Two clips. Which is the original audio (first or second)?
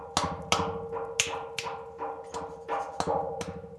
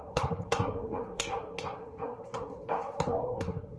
first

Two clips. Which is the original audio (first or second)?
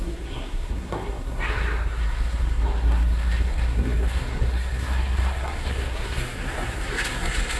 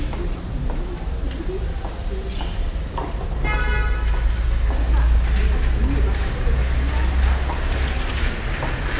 second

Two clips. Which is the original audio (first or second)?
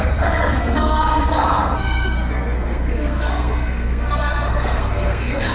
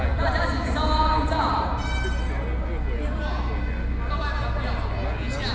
second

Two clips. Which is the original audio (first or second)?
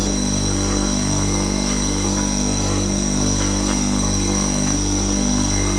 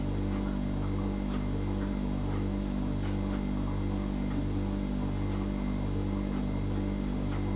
second